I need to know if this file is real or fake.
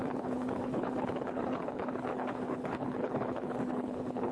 fake